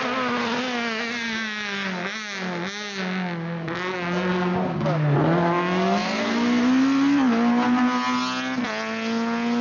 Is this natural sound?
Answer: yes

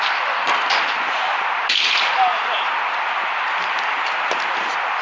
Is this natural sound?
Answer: yes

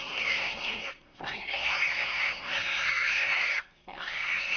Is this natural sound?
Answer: no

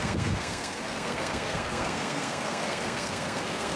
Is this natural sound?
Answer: no